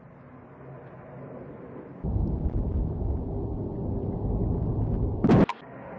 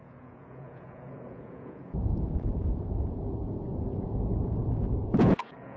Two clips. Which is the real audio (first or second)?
first